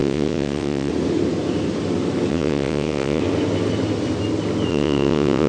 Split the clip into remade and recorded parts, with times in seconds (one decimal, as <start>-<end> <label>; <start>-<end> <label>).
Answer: 0.0-0.9 remade; 0.9-2.3 recorded; 2.3-3.2 remade; 3.2-4.7 recorded; 4.7-5.5 remade